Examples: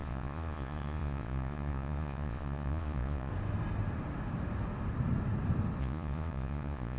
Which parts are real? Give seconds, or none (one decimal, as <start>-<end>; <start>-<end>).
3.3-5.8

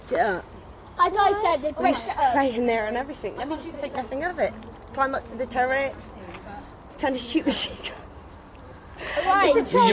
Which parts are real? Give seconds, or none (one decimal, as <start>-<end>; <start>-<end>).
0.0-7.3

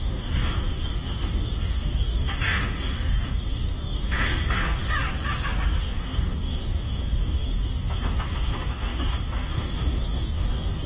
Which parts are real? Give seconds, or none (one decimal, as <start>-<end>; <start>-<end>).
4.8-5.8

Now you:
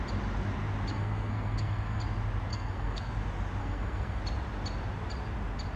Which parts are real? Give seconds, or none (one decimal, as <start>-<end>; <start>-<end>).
0.0-0.9; 2.0-2.5; 3.1-3.6; 4.2-5.8

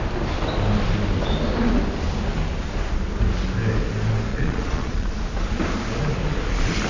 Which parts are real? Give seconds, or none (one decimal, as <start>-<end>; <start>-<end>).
0.0-4.3; 5.1-6.9

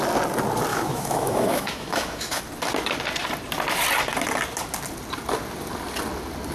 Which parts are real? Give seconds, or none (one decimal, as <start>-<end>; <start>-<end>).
0.0-0.7; 2.4-6.5